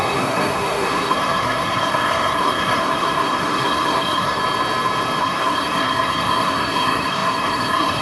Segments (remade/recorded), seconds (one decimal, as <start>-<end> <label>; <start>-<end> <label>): 0.0-4.4 remade; 4.4-5.2 recorded; 5.2-8.0 remade